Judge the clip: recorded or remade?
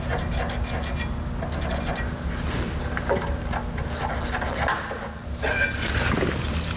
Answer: recorded